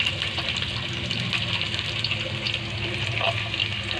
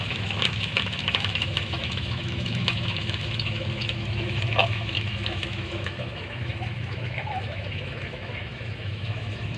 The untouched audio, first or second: first